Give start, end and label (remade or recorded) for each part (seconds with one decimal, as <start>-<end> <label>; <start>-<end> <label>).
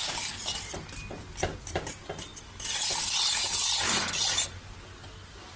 0.0-2.3 recorded; 2.3-4.4 remade; 4.4-5.6 recorded